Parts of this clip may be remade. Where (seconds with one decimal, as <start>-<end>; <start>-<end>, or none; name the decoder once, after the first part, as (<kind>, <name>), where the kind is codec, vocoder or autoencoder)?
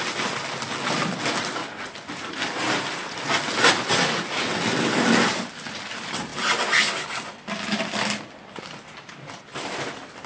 1.6-2.9 (vocoder, BigVGAN v2)